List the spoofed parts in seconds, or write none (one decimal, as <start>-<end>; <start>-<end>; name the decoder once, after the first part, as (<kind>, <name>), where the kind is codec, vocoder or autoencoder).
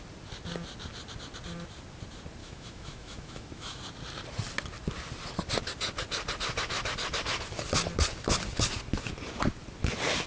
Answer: 2.4-3.8 (autoencoder, DAC-VAE)